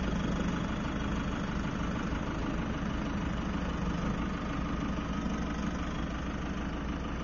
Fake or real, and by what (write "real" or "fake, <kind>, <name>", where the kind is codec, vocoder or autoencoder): real